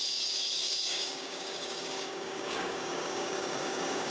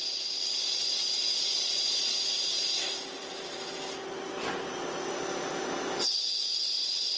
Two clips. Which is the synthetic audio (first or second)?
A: first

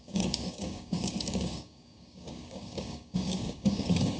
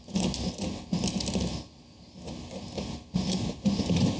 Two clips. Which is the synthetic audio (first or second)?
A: first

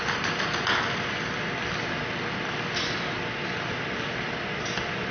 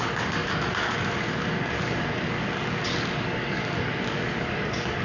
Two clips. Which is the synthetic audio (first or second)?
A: second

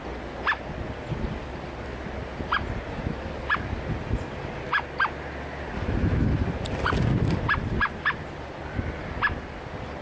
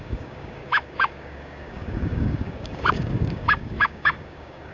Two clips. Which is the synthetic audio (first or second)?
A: second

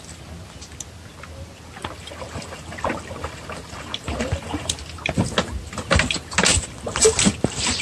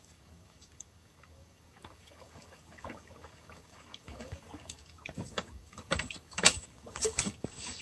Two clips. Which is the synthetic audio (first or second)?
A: second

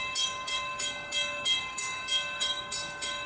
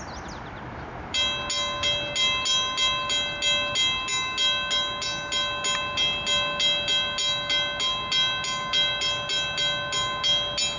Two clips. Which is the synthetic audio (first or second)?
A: first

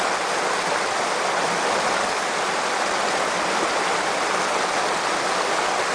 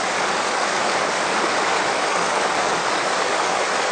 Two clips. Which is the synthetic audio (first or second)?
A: second